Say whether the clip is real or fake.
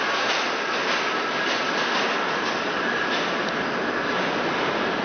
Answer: real